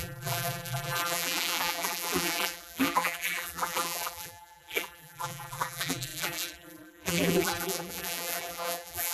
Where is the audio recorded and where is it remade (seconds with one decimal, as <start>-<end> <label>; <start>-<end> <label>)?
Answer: 0.0-9.1 remade